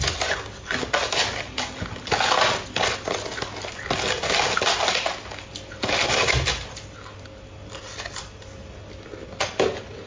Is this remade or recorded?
recorded